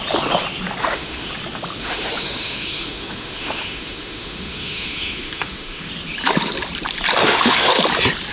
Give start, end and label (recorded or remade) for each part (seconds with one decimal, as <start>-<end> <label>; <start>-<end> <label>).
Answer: 0.0-0.8 recorded; 0.8-1.3 remade; 1.3-1.8 recorded; 1.8-5.9 remade; 5.9-7.2 recorded; 7.2-7.7 remade; 7.7-8.3 recorded